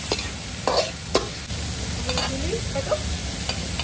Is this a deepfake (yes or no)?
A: no